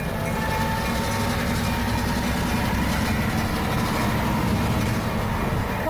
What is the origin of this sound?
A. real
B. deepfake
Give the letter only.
A